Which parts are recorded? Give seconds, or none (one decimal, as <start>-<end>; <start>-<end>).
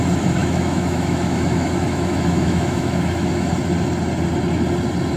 0.0-0.4; 3.5-5.2